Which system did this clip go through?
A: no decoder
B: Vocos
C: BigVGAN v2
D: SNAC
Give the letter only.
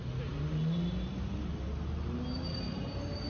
A